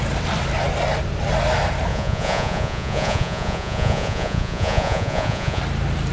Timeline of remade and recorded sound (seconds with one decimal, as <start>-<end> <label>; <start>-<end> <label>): 0.0-1.9 recorded; 1.9-5.6 remade; 5.6-6.1 recorded